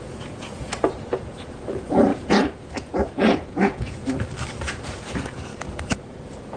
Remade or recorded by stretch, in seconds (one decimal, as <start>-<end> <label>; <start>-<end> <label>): 0.0-4.0 remade; 4.0-4.7 recorded; 4.7-6.6 remade